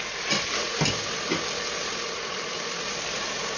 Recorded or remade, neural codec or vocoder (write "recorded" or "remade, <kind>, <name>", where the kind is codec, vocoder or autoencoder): recorded